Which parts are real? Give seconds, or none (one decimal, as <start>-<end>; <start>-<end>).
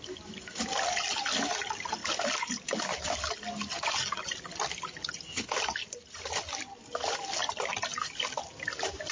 0.0-9.1